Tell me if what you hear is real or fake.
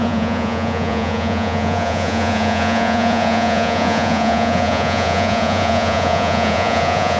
fake